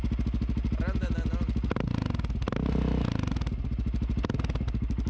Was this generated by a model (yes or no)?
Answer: no